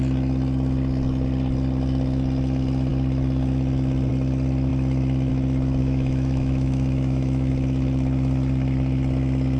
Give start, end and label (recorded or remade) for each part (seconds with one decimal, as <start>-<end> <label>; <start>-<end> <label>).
0.0-5.8 recorded; 5.8-7.5 remade; 7.5-9.6 recorded